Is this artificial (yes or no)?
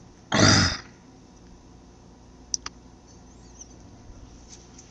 no